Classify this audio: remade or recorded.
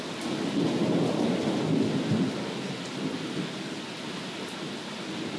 recorded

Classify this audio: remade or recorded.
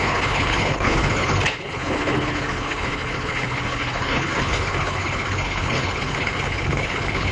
remade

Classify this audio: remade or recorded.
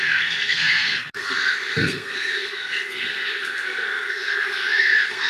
remade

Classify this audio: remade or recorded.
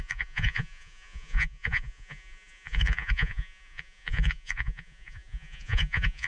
remade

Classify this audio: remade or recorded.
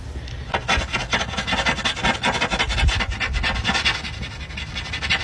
recorded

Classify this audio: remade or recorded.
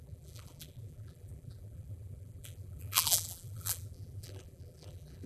remade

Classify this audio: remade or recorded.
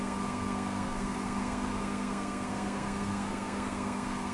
remade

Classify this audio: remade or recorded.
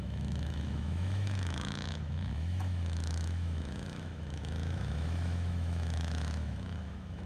remade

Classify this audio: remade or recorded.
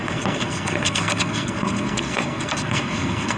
remade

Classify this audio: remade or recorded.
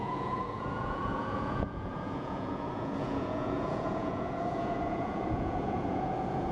remade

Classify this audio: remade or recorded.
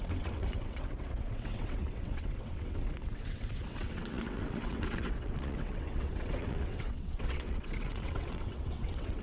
remade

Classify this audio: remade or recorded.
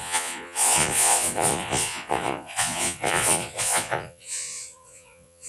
remade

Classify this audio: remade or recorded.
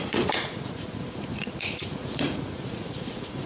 remade